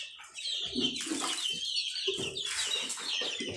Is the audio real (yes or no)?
yes